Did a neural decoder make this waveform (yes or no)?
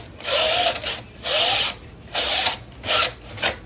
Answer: no